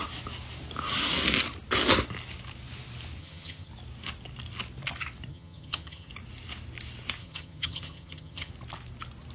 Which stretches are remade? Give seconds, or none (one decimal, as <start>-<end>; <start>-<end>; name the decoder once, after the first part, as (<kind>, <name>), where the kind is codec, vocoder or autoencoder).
3.2-3.7 (vocoder, HiFi-GAN); 5.3-6.1; 7.2-8.5